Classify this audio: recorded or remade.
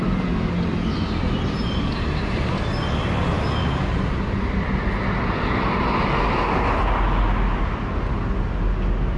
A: recorded